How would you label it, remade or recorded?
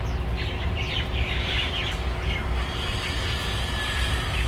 recorded